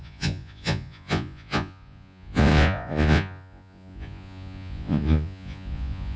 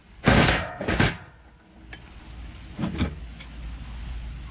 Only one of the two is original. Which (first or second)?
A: second